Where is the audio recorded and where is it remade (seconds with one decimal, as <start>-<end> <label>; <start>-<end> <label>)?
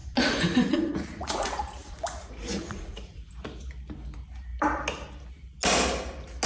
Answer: 0.0-3.3 remade; 3.3-6.5 recorded